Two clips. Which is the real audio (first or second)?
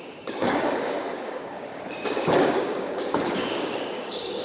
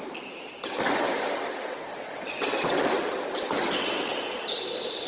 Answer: second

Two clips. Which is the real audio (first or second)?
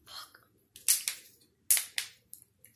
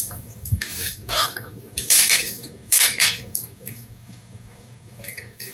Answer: first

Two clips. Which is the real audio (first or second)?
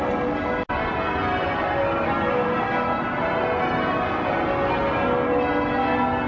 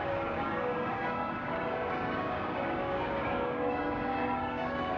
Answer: first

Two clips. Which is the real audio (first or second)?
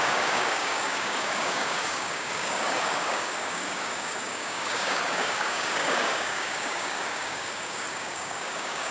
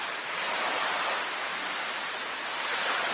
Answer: second